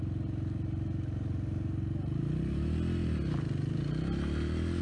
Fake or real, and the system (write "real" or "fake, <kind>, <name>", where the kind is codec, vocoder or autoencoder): real